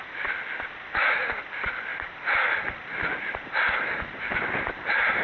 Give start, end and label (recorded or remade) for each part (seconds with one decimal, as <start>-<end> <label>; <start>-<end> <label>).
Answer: 0.0-1.9 recorded; 1.9-5.2 remade